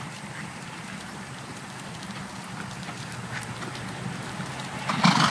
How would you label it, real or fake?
real